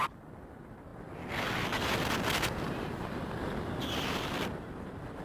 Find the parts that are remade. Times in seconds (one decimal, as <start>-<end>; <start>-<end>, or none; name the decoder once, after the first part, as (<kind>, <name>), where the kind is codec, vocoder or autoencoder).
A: none